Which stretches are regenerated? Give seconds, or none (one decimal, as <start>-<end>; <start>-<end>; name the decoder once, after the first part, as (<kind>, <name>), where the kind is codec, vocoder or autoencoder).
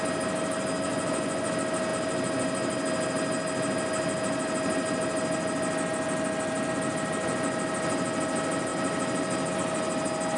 0.9-1.5 (vocoder, Vocos)